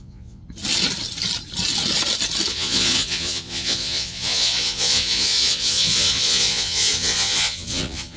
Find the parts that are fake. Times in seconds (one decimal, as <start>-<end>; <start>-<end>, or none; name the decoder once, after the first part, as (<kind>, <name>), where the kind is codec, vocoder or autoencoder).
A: 0.0-0.4 (vocoder, Vocos); 2.5-8.2